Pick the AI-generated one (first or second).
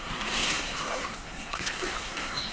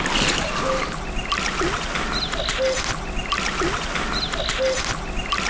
first